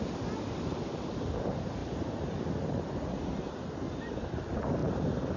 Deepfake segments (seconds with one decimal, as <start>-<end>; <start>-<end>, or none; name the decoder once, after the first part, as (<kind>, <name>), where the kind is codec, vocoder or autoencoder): none